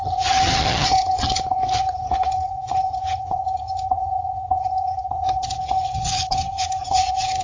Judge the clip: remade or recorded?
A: remade